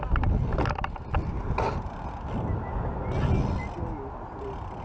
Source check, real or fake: real